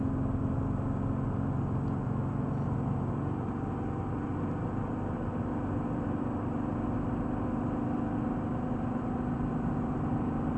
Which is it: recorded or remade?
recorded